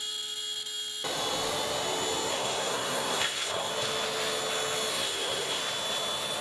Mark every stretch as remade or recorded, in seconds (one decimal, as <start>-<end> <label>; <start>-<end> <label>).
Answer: 0.0-2.3 recorded; 2.3-3.7 remade; 3.7-4.9 recorded; 4.9-5.6 remade; 5.6-6.4 recorded